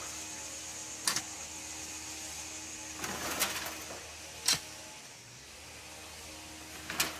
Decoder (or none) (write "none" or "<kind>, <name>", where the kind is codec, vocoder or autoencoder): none